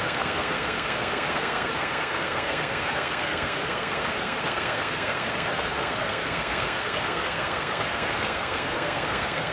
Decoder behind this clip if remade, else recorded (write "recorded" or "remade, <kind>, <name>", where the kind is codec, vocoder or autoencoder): remade, codec, SNAC